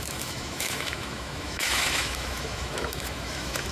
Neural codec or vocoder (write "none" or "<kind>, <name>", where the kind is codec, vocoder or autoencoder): autoencoder, DAC-VAE